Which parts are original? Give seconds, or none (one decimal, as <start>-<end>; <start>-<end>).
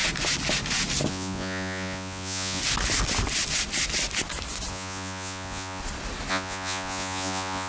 0.0-1.1; 2.6-4.7; 5.8-6.3